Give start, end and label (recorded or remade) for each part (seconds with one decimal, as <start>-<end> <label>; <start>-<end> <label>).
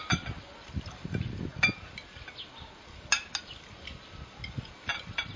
0.0-5.4 recorded